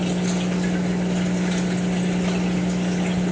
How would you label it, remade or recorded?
recorded